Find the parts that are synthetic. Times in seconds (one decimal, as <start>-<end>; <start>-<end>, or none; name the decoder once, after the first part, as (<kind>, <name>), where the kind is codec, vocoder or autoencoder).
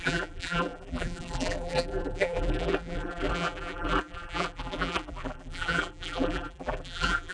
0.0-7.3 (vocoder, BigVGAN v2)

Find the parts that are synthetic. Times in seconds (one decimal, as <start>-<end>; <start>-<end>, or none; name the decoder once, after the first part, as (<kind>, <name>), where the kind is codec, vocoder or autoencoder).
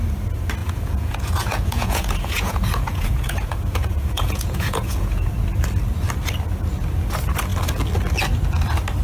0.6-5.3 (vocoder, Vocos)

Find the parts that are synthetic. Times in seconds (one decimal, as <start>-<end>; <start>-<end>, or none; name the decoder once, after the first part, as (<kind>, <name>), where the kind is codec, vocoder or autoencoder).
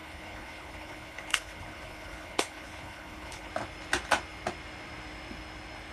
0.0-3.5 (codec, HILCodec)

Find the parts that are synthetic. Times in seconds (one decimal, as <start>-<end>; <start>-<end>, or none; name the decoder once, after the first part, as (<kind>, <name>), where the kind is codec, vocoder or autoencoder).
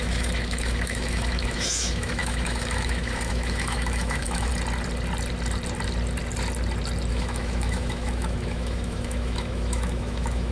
0.0-4.5 (autoencoder, DAC-VAE); 7.1-10.5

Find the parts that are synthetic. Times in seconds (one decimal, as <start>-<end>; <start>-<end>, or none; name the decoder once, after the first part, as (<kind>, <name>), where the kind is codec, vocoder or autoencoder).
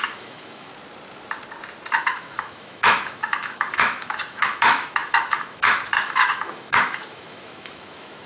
0.0-0.7 (autoencoder, DAC-VAE); 2.0-8.3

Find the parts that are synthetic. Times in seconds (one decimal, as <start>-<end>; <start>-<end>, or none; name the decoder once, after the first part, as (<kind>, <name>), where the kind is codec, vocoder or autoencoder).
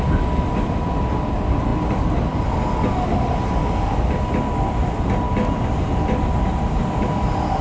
none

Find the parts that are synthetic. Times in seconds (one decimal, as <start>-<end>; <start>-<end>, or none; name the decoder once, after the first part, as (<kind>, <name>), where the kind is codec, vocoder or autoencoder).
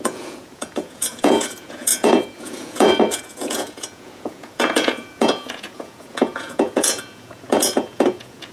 0.0-8.5 (vocoder, Vocos)